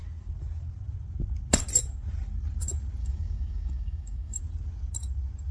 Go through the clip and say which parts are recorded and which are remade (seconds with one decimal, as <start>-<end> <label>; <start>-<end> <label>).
0.0-3.0 recorded; 3.0-4.4 remade; 4.4-5.5 recorded